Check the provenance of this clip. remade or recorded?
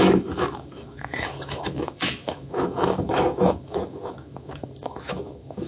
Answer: remade